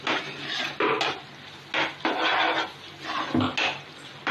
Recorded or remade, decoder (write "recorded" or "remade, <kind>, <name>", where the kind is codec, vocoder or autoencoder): recorded